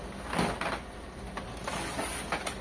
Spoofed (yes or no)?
no